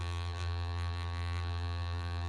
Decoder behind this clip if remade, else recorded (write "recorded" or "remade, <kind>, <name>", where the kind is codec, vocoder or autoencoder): remade, vocoder, BigVGAN v2